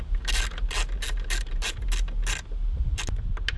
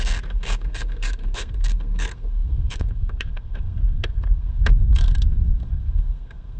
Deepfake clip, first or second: second